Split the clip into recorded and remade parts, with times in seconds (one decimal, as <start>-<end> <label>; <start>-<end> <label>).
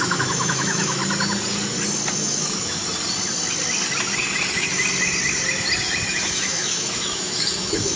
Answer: 0.0-1.0 remade; 1.0-2.1 recorded; 2.1-2.8 remade; 2.8-6.1 recorded; 6.1-8.0 remade